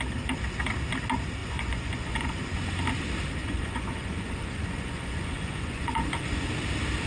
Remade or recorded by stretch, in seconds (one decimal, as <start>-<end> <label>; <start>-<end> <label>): 0.0-1.4 recorded; 1.4-2.6 remade; 2.6-3.4 recorded; 3.4-6.5 remade; 6.5-7.1 recorded